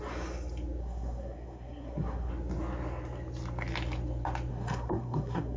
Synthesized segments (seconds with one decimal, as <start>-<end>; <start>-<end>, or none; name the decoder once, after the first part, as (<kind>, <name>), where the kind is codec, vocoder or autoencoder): 0.8-2.3 (codec, SNAC); 4.5-5.6